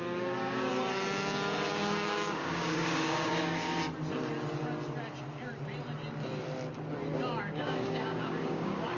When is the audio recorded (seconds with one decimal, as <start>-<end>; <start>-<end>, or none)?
0.7-1.7; 3.8-7.4